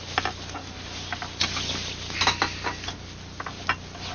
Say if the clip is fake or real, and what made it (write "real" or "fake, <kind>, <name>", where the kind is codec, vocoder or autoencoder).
real